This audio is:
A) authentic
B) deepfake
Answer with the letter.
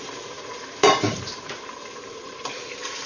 B